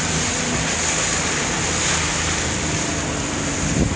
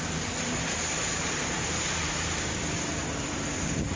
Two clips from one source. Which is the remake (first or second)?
second